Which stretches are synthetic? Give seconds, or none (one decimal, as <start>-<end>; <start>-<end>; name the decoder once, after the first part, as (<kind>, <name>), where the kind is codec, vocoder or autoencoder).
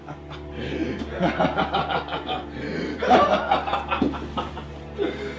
0.8-1.6 (vocoder, BigVGAN v2); 2.7-3.4